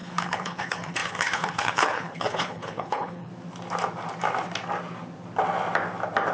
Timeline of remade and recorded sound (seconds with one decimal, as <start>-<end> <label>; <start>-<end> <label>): 0.0-3.3 remade; 3.3-6.3 recorded